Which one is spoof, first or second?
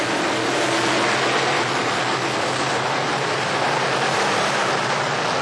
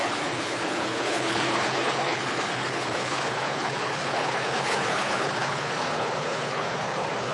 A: second